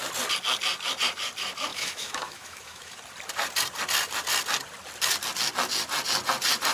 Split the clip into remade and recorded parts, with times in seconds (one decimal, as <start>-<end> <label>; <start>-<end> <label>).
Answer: 0.0-1.7 recorded; 1.7-3.0 remade; 3.0-6.7 recorded